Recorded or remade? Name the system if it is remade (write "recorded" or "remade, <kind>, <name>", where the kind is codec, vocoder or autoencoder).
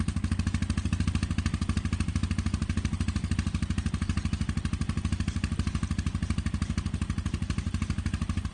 recorded